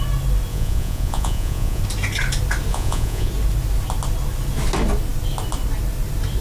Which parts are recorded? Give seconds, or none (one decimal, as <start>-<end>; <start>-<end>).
0.0-0.5; 1.8-2.7; 3.3-6.4